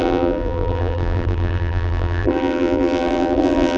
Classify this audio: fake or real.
fake